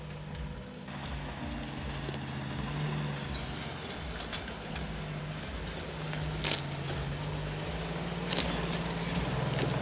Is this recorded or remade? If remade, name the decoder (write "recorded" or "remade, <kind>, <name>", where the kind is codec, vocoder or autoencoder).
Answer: recorded